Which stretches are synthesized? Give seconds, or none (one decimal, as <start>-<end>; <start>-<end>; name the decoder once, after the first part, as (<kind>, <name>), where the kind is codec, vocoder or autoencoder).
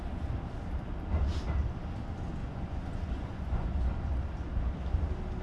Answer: 2.4-3.8 (vocoder, Vocos)